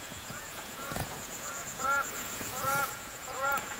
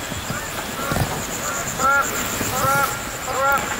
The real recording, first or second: second